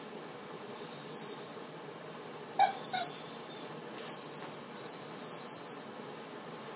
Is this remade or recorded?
recorded